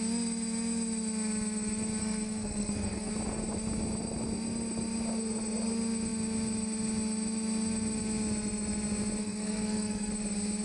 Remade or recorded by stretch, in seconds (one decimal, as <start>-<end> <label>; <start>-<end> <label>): 0.0-2.0 recorded; 2.0-3.1 remade; 3.1-9.2 recorded; 9.2-10.1 remade; 10.1-10.6 recorded